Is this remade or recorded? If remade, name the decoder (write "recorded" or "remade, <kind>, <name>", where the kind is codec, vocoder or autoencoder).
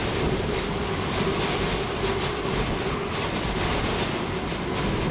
recorded